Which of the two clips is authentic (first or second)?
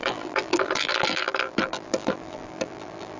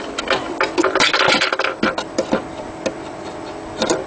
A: second